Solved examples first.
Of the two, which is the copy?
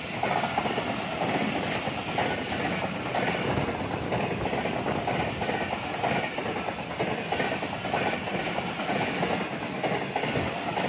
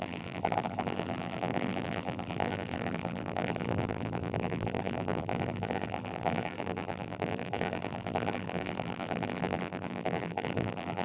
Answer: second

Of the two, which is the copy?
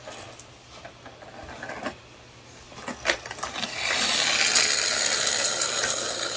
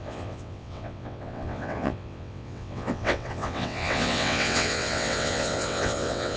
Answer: second